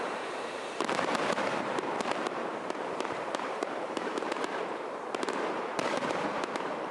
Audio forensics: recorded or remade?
remade